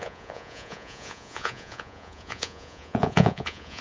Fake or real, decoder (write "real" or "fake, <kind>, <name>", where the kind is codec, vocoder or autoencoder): fake, vocoder, Vocos